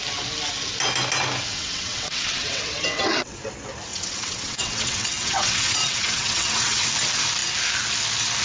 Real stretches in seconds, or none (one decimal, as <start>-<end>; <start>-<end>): 0.0-1.5; 3.4-3.9; 6.9-8.4